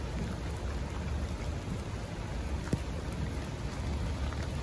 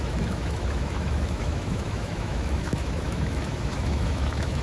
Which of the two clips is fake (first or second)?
second